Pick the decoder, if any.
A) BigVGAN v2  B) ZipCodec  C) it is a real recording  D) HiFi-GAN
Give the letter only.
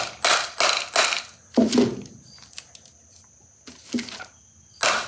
C